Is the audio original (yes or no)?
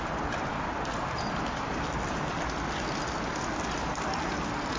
yes